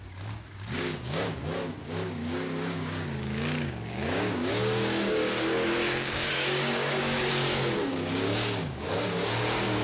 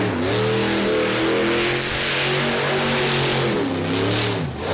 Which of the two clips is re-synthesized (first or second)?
first